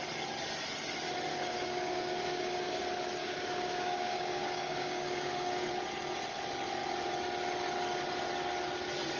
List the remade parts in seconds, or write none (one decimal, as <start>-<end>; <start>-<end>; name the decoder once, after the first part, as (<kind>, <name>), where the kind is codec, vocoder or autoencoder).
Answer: 1.3-2.8 (codec, DAC); 3.2-5.7